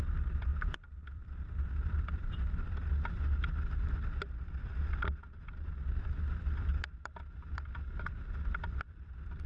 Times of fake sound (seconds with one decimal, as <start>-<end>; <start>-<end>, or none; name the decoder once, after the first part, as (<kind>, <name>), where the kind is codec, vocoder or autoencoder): 0.5-3.2 (vocoder, BigVGAN v2); 6.7-9.1